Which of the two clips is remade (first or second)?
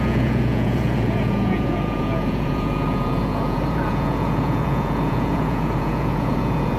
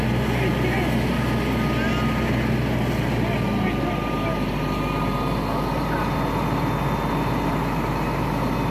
first